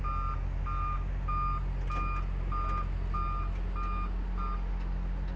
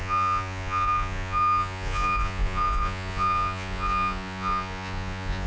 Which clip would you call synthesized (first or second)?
second